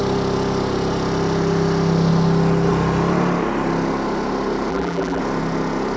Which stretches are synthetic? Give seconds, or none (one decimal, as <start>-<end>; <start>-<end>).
4.7-5.2